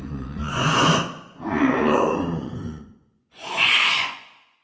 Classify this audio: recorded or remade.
remade